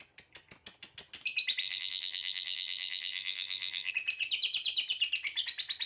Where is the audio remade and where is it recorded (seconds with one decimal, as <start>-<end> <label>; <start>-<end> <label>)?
0.0-1.6 recorded; 1.6-3.9 remade; 3.9-5.9 recorded

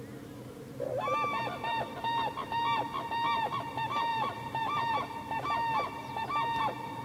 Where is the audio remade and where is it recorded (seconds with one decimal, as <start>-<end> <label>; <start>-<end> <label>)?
0.0-1.6 recorded; 1.6-2.3 remade; 2.3-4.1 recorded; 4.1-4.9 remade; 4.9-7.0 recorded

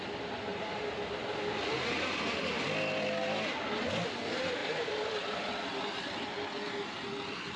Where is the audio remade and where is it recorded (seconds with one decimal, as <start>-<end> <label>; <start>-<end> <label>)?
0.0-4.6 recorded; 4.6-6.3 remade; 6.3-7.6 recorded

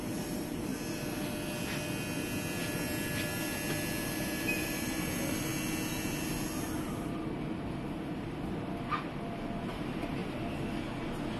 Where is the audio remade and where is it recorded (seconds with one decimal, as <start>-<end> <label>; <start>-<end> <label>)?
0.0-0.7 remade; 0.7-4.0 recorded; 4.0-5.5 remade; 5.5-9.7 recorded; 9.7-10.2 remade; 10.2-11.4 recorded

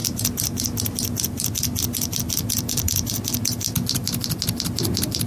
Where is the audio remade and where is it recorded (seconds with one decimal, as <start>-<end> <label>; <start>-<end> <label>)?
0.0-5.3 recorded

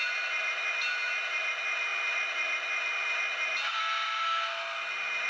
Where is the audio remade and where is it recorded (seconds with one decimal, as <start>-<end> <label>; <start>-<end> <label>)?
0.0-5.3 recorded

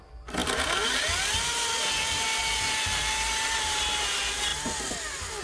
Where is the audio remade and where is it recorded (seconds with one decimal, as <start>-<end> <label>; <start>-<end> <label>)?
0.0-5.4 recorded

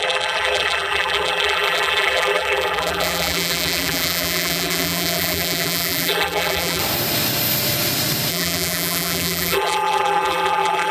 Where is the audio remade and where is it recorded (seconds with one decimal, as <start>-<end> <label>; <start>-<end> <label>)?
0.0-6.8 remade; 6.8-8.3 recorded; 8.3-10.9 remade